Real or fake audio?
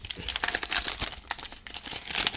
real